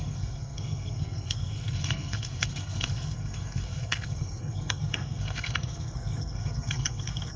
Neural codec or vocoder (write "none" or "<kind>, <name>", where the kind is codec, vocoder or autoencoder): codec, SNAC